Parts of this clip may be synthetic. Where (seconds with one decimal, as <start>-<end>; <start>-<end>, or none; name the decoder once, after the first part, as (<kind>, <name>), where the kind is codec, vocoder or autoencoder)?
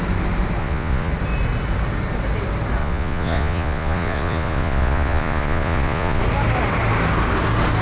0.6-1.1 (vocoder, Vocos); 2.8-6.2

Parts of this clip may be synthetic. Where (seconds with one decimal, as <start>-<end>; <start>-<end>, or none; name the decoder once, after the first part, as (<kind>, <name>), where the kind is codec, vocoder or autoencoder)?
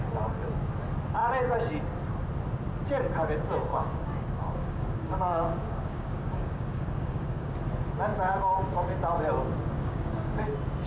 3.7-7.6 (codec, DAC); 9.6-10.5